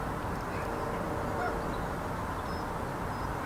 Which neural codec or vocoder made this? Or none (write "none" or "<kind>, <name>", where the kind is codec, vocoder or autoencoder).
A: none